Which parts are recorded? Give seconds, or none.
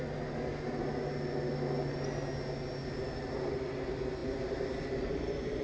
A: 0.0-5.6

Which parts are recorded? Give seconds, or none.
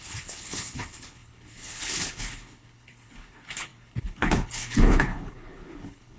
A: none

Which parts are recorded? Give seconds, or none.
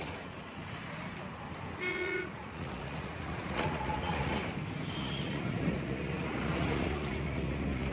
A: 0.6-1.9; 4.4-5.0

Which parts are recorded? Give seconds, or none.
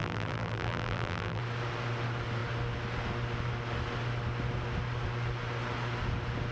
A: 1.4-6.5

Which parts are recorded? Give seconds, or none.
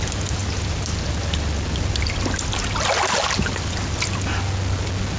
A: 0.0-0.4; 2.5-5.2